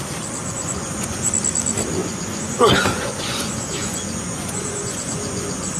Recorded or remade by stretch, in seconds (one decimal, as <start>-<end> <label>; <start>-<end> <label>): 0.0-0.4 recorded; 0.4-1.3 remade; 1.3-2.0 recorded; 2.0-5.8 remade